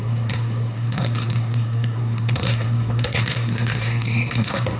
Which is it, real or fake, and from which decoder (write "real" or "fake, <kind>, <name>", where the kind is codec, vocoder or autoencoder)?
fake, codec, SNAC